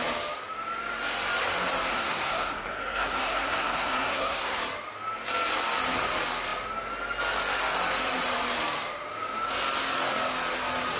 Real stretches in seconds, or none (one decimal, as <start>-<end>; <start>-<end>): 0.0-1.9; 4.6-11.0